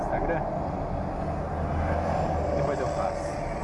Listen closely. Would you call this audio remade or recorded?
recorded